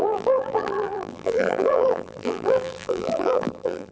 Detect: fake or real fake